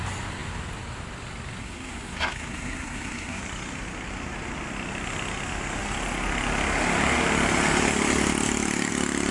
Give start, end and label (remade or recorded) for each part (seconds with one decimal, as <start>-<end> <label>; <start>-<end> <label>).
0.0-1.6 recorded; 1.6-3.4 remade; 3.4-9.3 recorded